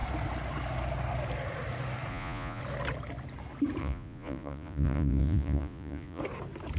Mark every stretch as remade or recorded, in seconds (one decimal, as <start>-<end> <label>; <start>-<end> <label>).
0.0-2.1 recorded; 2.1-2.6 remade; 2.6-3.8 recorded; 3.8-6.2 remade; 6.2-6.8 recorded